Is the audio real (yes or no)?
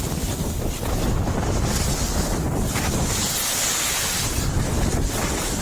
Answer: yes